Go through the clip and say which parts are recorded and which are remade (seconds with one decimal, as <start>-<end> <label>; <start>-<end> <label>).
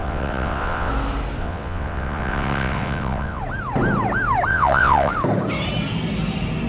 0.0-0.9 remade; 0.9-1.4 recorded; 1.4-3.4 remade; 3.4-4.5 recorded; 4.5-5.1 remade; 5.1-6.7 recorded